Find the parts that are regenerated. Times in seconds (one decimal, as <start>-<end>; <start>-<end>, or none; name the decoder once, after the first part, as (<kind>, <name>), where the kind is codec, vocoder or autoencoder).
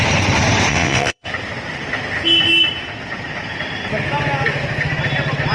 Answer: 0.7-1.3 (vocoder, WaveNeXt)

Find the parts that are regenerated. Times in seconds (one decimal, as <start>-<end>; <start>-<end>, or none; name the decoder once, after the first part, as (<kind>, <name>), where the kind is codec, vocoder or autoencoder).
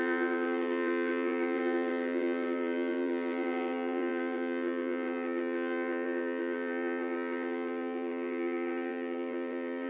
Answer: 0.0-9.9 (vocoder, BigVGAN v2)